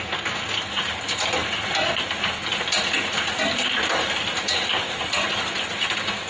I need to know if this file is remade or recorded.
recorded